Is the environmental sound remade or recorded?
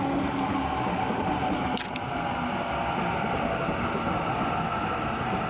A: recorded